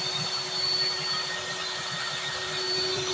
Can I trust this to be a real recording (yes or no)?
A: no